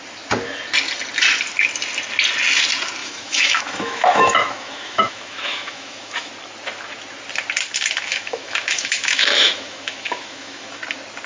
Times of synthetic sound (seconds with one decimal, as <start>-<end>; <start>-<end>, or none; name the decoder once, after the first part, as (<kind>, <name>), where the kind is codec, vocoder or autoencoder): 3.0-6.3 (autoencoder, DAC-VAE); 8.1-10.8